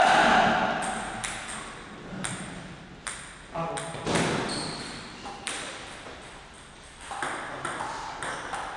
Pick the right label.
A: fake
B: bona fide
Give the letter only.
A